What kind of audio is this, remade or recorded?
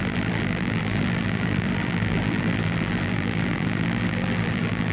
remade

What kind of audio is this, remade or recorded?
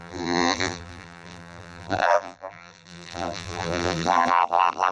remade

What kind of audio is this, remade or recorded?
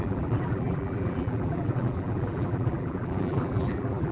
remade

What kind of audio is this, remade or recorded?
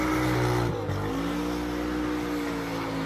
recorded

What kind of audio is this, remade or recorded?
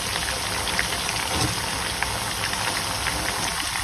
recorded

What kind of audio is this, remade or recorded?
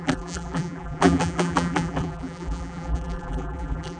remade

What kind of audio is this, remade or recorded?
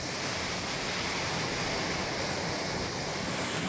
recorded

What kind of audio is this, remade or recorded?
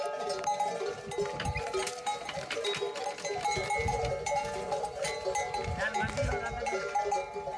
recorded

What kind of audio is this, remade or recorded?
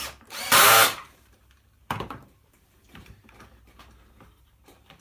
remade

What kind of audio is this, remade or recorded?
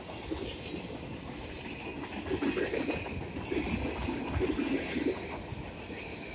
recorded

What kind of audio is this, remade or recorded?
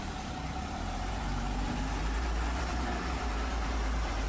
remade